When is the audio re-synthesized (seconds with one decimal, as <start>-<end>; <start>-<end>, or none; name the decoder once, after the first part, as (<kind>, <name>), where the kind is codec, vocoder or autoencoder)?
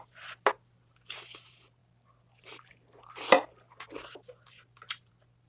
none